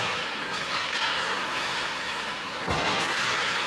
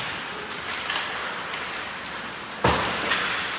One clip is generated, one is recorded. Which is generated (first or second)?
first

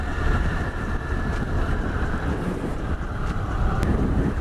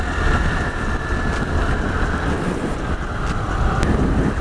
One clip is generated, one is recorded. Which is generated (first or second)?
first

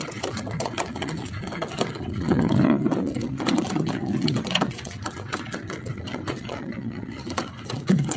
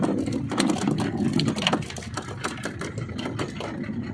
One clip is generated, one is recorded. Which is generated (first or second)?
first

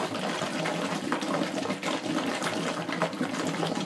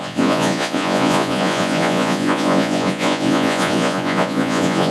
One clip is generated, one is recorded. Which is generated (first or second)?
second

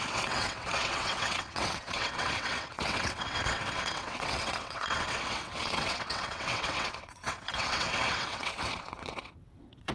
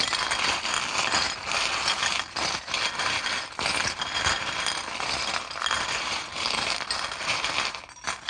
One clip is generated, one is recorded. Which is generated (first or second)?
first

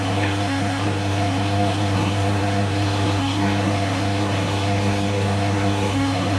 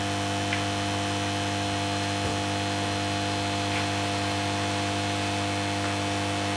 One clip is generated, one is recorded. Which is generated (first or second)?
first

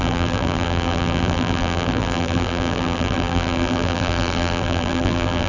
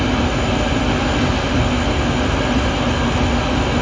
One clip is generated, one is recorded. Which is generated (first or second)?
first